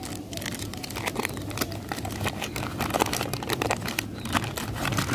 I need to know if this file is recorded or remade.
recorded